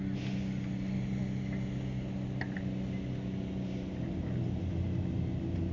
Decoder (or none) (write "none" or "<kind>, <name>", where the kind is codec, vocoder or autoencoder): none